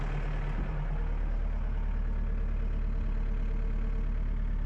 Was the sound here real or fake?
real